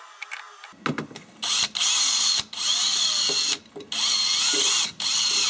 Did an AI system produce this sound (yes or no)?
no